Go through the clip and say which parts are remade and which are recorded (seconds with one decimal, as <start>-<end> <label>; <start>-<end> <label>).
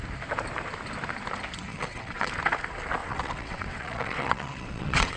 0.0-1.7 recorded; 1.7-2.3 remade; 2.3-3.0 recorded; 3.0-5.2 remade